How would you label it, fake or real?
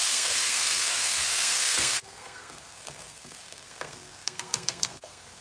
fake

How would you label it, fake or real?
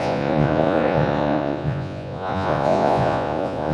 fake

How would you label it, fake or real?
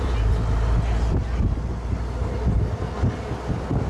real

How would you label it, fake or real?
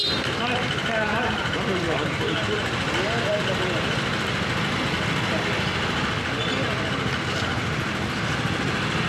real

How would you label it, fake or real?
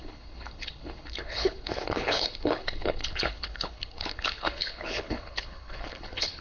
fake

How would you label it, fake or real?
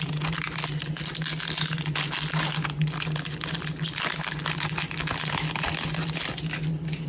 real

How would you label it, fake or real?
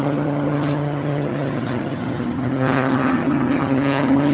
fake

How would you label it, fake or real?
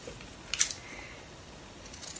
real